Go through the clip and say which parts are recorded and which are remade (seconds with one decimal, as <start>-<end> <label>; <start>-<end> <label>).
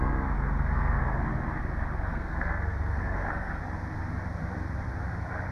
0.0-1.2 remade; 1.2-2.0 recorded; 2.0-3.6 remade; 3.6-5.5 recorded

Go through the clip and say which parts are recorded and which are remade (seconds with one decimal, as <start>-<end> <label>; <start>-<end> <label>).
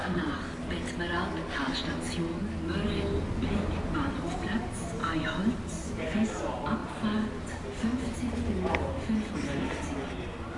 0.0-10.6 recorded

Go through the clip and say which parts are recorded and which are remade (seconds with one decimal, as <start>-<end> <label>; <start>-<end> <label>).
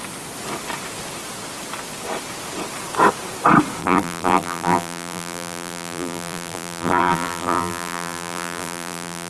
0.0-3.8 recorded; 3.8-9.3 remade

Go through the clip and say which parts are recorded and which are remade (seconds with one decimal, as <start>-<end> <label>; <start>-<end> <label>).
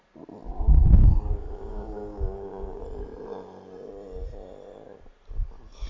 0.0-1.0 recorded; 1.0-2.8 remade; 2.8-5.9 recorded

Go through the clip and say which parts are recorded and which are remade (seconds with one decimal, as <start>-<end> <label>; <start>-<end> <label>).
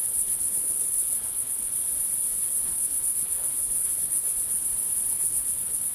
0.0-1.7 remade; 1.7-2.2 recorded; 2.2-4.6 remade; 4.6-5.1 recorded; 5.1-5.9 remade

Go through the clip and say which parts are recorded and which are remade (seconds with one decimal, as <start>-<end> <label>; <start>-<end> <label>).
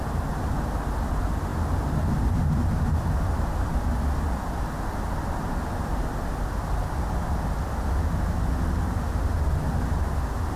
0.0-10.6 recorded